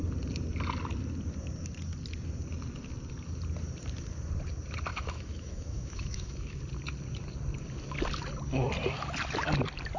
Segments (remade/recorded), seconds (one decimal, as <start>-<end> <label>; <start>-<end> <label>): 0.0-4.9 recorded; 4.9-6.6 remade; 6.6-10.0 recorded